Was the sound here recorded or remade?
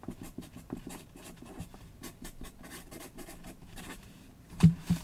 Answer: remade